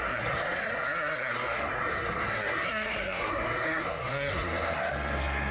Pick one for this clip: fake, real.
fake